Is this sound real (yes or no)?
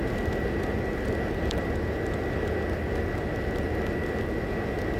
yes